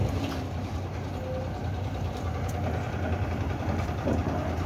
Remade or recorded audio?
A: recorded